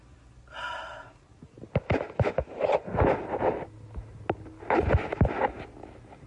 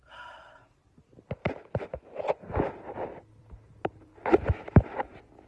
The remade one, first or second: second